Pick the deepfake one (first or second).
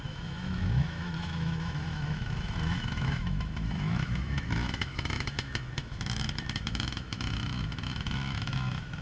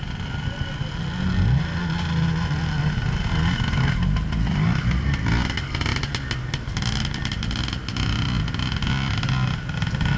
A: first